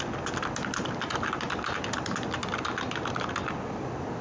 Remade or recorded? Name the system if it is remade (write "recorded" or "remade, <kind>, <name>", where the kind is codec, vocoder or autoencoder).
recorded